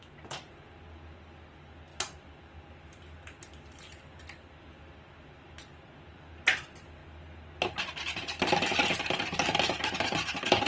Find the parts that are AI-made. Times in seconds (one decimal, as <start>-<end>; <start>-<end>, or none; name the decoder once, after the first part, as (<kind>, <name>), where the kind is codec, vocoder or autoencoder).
none